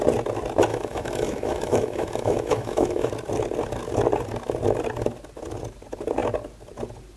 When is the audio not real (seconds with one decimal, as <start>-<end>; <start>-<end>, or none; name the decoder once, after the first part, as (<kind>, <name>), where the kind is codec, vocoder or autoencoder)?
0.7-3.1 (autoencoder, DAC-VAE)